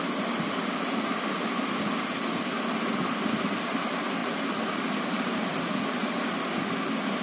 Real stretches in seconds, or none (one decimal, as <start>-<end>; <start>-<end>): 0.0-4.2; 5.9-7.2